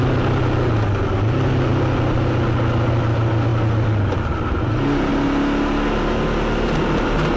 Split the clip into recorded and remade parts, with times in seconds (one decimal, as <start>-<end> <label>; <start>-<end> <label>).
0.0-7.4 recorded